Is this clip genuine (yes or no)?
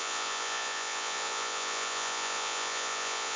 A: no